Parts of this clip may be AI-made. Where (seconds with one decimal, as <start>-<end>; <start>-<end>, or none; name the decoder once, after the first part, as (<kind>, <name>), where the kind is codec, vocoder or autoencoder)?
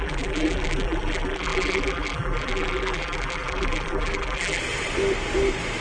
0.0-4.6 (vocoder, BigVGAN v2)